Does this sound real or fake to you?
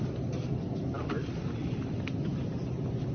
fake